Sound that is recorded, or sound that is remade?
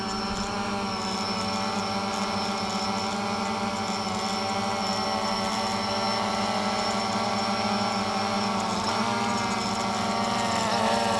recorded